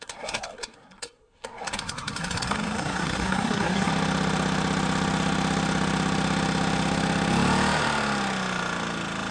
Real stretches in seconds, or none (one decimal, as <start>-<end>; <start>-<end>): 3.9-9.3